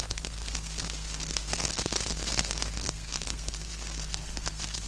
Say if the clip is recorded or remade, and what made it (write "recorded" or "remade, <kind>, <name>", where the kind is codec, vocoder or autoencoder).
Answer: remade, codec, SNAC